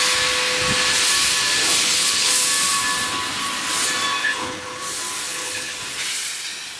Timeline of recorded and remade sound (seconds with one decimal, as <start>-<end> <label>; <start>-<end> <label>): 0.0-1.7 recorded; 1.7-2.3 remade; 2.3-4.2 recorded; 4.2-4.8 remade; 4.8-5.3 recorded; 5.3-5.8 remade; 5.8-6.8 recorded